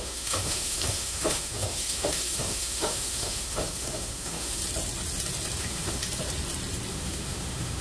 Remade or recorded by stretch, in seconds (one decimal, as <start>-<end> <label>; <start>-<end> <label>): 0.0-4.6 remade; 4.6-5.6 recorded; 5.6-6.0 remade; 6.0-6.9 recorded; 6.9-7.8 remade